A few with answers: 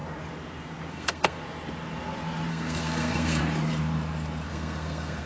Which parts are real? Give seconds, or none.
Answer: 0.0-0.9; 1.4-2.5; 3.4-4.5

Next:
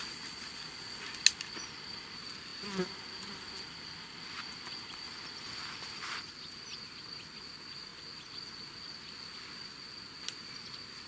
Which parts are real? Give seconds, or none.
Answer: 0.0-11.1

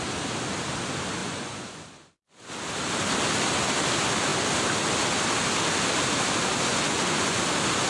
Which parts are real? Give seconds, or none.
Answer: 0.0-1.2; 2.5-6.7; 7.4-7.9

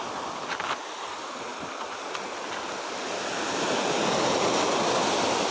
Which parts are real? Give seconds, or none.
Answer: 0.0-5.5

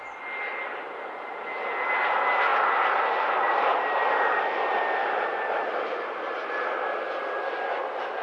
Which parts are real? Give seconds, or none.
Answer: 0.0-8.2

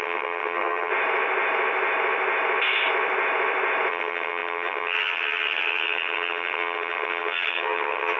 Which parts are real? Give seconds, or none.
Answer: 0.9-3.9